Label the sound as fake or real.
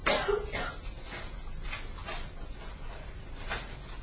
real